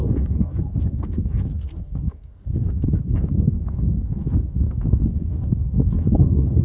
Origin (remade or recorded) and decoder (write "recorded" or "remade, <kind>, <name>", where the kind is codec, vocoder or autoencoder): remade, codec, SNAC